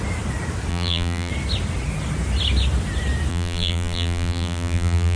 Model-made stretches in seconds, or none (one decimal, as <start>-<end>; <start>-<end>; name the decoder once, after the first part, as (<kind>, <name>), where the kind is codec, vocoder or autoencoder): 0.7-1.3 (vocoder, BigVGAN v2); 3.3-5.2